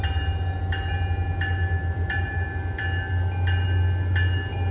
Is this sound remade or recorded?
recorded